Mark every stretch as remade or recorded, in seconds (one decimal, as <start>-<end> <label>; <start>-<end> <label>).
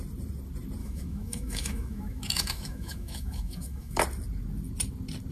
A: 0.0-0.8 recorded; 0.8-4.0 remade; 4.0-5.3 recorded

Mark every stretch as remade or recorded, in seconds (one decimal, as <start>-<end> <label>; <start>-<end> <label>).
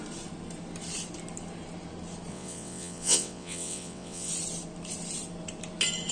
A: 0.0-2.3 recorded; 2.3-4.3 remade; 4.3-6.1 recorded